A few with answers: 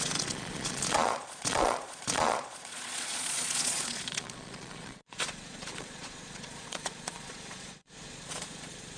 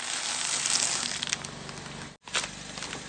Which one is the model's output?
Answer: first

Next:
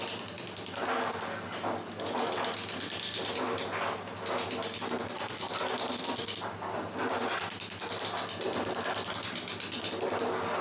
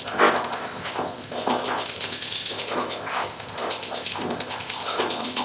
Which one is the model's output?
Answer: second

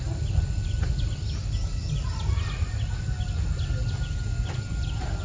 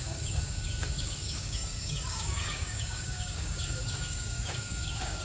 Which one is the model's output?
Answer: second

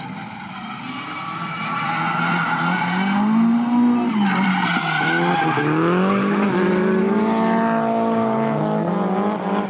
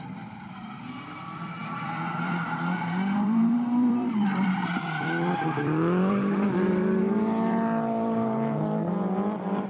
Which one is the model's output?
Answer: second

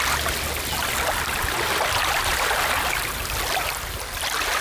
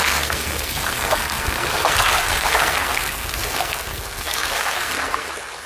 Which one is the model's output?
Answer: second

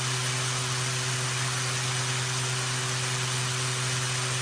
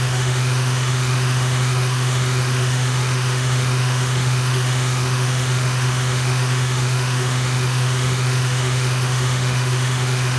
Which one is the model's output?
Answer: second